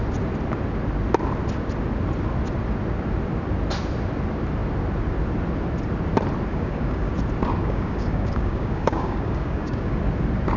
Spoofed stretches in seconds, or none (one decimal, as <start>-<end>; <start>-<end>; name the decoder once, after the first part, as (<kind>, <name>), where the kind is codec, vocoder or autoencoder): 6.5-7.1 (codec, DAC); 7.6-10.0